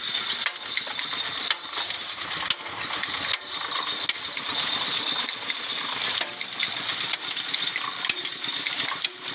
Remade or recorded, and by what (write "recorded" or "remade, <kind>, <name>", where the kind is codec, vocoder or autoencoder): recorded